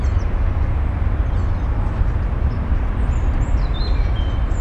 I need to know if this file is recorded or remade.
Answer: recorded